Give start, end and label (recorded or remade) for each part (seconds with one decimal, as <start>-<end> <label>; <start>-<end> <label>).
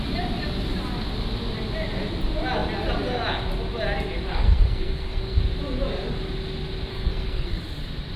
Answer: 0.0-4.3 recorded; 4.3-5.4 remade; 5.4-6.9 recorded; 6.9-7.6 remade; 7.6-8.2 recorded